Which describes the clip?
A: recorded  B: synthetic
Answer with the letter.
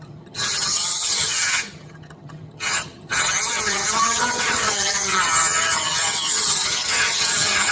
B